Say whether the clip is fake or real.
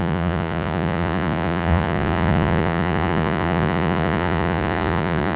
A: fake